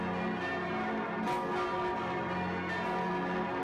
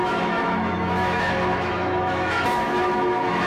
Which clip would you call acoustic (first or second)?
first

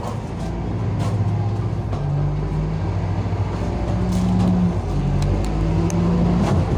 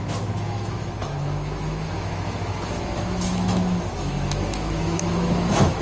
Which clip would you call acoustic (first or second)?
first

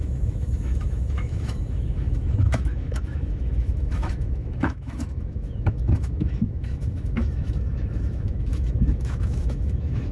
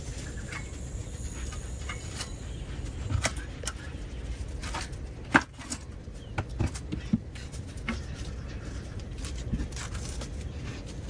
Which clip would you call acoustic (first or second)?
second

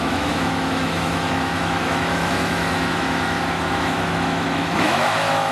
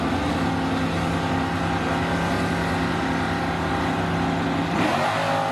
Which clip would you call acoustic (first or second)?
second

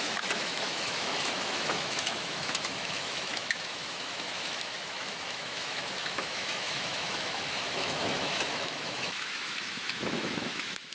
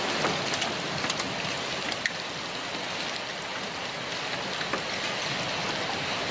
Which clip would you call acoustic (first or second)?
second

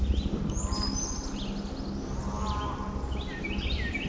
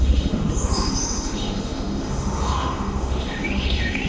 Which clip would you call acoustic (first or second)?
first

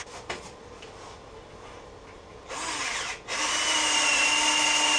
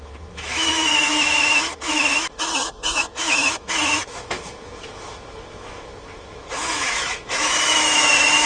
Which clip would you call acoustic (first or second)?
first